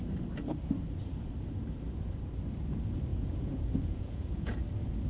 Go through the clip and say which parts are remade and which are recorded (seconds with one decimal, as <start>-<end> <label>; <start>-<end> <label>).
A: 0.0-3.1 recorded; 3.1-4.6 remade; 4.6-5.1 recorded